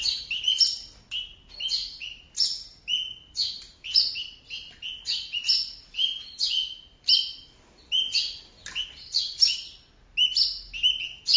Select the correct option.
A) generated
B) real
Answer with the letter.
B